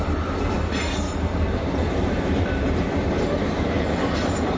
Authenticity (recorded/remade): remade